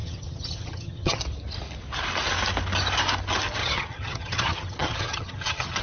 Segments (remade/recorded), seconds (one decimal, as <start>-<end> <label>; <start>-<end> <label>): 0.0-1.2 remade; 1.2-3.6 recorded; 3.6-5.8 remade